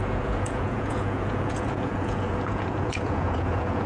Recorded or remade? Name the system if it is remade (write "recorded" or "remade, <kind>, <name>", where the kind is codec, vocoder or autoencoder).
remade, vocoder, Vocos